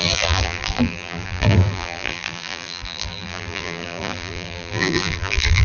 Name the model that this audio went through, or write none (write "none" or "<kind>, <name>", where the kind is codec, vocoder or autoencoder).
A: vocoder, BigVGAN v2